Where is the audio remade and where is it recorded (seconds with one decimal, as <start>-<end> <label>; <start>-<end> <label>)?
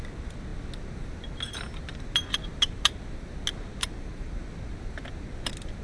0.0-5.8 recorded